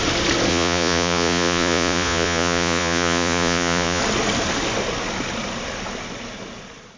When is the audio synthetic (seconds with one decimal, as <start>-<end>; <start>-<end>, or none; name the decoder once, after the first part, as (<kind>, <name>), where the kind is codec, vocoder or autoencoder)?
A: 0.5-4.0 (vocoder, Vocos)